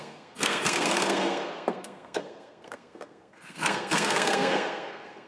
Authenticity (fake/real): fake